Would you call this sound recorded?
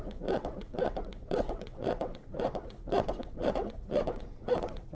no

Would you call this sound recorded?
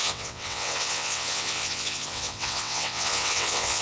no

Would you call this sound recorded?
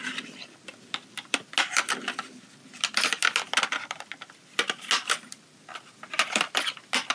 yes